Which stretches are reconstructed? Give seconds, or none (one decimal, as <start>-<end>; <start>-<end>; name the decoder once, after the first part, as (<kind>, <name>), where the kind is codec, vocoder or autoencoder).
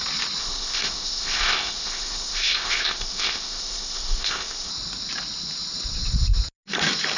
0.4-4.7 (codec, ZipCodec)